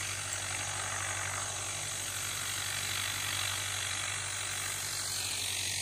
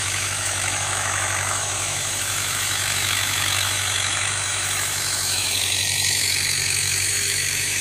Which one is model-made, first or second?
second